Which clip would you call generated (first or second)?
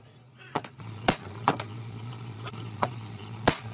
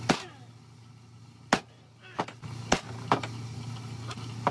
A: first